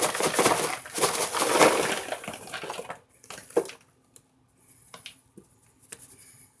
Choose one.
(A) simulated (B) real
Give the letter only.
B